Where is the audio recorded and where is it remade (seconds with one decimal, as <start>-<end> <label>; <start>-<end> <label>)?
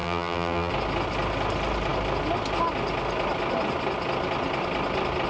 0.0-0.7 remade; 0.7-5.3 recorded